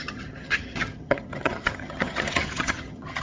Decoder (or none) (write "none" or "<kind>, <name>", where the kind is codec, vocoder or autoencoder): vocoder, HiFi-GAN